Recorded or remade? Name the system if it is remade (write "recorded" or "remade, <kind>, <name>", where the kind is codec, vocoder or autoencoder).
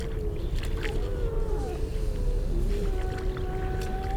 recorded